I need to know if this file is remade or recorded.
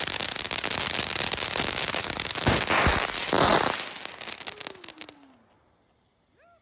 recorded